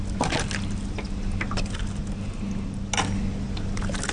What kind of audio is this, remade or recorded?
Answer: recorded